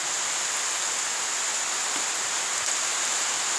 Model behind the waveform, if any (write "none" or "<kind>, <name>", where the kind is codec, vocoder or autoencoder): none